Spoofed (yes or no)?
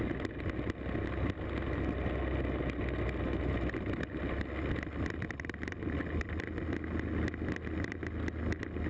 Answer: no